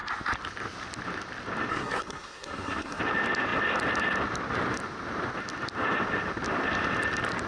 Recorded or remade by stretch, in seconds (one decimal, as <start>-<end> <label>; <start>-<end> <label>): 0.0-1.7 recorded; 1.7-3.0 remade; 3.0-7.5 recorded